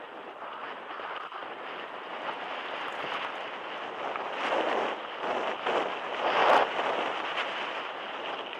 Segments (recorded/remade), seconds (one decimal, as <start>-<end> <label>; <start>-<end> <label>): 0.0-6.4 recorded; 6.4-8.6 remade